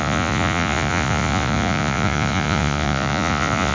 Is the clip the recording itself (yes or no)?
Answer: no